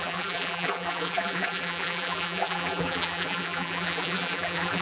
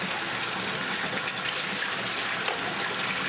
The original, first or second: second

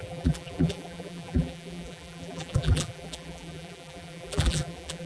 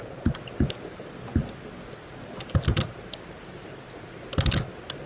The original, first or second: second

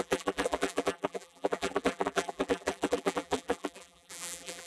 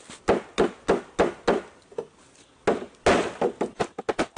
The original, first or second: second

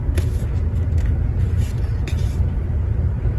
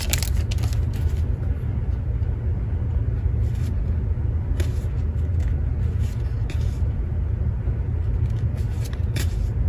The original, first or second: second